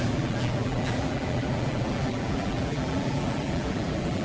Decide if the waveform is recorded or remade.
remade